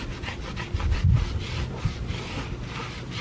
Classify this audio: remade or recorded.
recorded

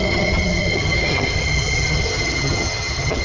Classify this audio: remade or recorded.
remade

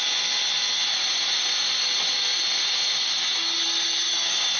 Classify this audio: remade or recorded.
recorded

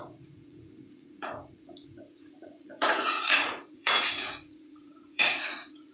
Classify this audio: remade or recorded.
remade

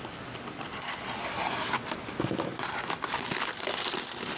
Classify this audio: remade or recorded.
recorded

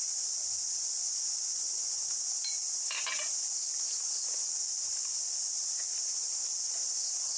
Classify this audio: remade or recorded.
recorded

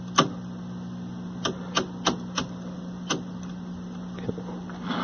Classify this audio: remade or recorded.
recorded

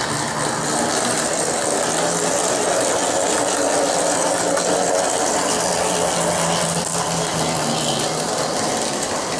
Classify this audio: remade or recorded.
recorded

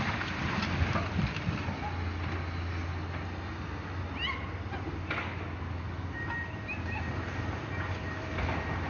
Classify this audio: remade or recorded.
recorded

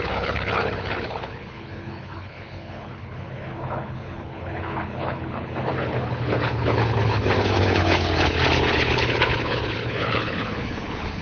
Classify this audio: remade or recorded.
remade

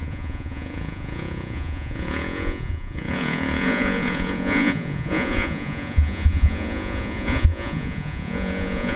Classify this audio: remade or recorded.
remade